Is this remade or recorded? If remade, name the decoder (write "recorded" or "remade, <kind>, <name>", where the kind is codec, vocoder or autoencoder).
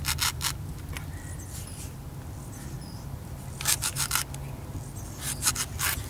recorded